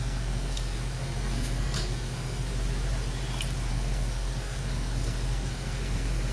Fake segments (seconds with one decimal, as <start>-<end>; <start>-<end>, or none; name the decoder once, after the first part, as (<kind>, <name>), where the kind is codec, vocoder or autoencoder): 0.0-2.5 (codec, SNAC); 3.7-6.3